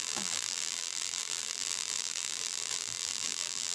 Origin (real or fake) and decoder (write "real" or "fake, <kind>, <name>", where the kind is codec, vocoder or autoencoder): fake, vocoder, BigVGAN v2